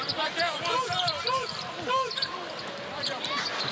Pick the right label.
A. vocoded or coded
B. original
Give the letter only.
B